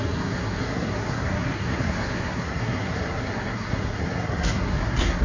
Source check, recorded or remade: remade